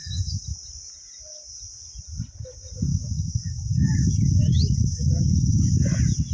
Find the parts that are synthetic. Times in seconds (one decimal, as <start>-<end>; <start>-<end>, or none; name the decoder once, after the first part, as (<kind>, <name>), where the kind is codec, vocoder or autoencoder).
2.9-5.7 (autoencoder, DAC-VAE)